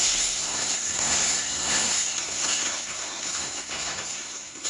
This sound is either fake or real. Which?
fake